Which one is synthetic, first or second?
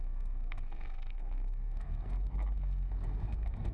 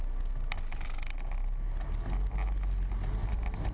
first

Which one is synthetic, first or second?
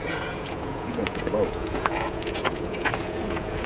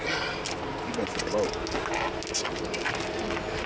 first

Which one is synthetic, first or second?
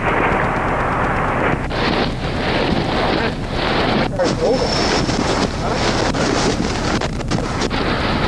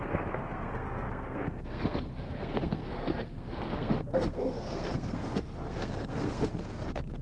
second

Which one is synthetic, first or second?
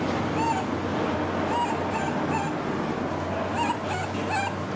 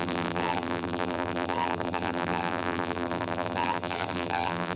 second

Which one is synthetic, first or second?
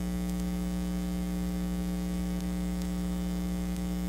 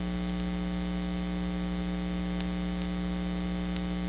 first